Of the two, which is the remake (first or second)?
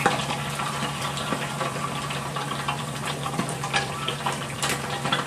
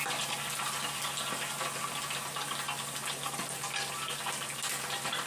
first